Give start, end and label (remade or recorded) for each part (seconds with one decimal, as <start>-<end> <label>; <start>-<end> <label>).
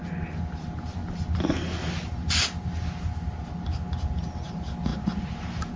0.0-5.8 recorded